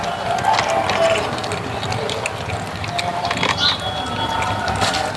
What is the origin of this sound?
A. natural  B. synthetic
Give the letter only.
A